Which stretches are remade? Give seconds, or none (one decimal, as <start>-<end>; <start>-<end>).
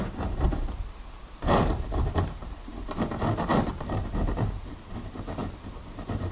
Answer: 0.0-2.7; 3.7-6.3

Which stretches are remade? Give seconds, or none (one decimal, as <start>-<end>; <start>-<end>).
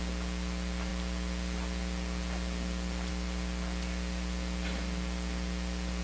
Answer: none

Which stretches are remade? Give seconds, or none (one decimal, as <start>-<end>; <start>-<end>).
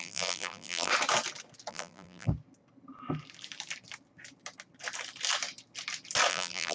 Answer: 0.0-0.9; 1.7-2.3; 6.3-6.7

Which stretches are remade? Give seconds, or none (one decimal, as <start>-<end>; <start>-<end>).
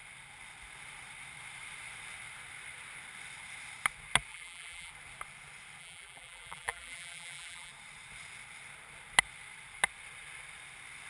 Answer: 4.3-4.9; 5.8-7.7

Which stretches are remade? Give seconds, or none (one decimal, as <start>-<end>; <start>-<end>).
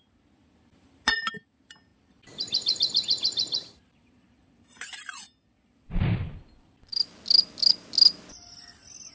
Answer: 1.9-5.5